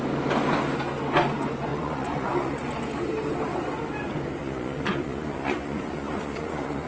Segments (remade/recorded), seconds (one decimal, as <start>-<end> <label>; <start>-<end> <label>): 0.0-1.7 recorded; 1.7-2.6 remade; 2.6-4.4 recorded; 4.4-6.9 remade